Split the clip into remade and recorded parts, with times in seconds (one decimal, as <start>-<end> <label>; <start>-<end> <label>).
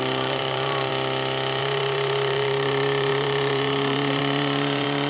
0.0-0.9 remade; 0.9-1.6 recorded; 1.6-5.1 remade